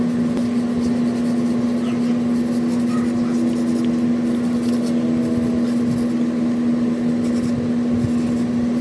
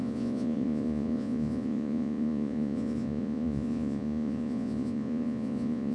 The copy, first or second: second